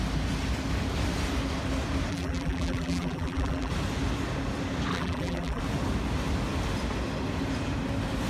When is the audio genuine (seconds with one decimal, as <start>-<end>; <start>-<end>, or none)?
0.0-2.1; 3.7-4.9; 5.6-8.3